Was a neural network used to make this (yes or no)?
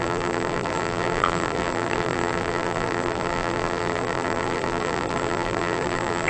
yes